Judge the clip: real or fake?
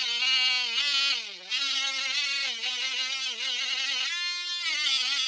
real